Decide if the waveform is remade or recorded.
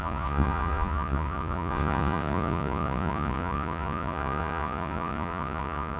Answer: remade